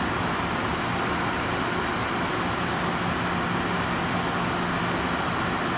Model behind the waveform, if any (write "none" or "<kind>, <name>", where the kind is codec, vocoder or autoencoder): none